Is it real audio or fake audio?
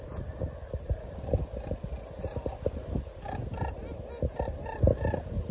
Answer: real